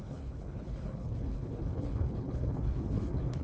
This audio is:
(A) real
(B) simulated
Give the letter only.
B